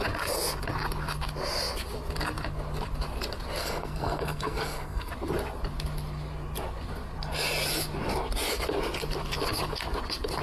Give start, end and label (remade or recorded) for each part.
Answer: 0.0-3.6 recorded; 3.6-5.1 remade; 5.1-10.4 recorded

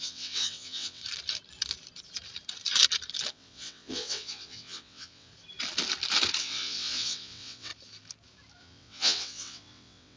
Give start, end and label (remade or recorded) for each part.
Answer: 0.0-1.0 remade; 1.0-3.3 recorded; 3.3-5.3 remade; 5.3-6.4 recorded; 6.4-7.7 remade; 7.7-8.6 recorded; 8.6-10.2 remade

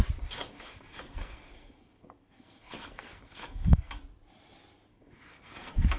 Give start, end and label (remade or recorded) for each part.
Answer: 0.0-0.5 recorded; 0.5-4.0 remade; 4.0-4.9 recorded; 4.9-6.0 remade